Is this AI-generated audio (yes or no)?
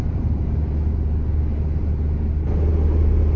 no